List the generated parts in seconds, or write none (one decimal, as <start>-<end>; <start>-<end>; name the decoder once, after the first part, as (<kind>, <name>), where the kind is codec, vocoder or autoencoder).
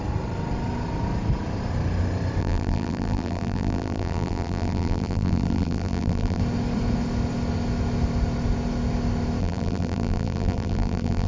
2.4-6.4 (vocoder, BigVGAN v2); 9.4-11.3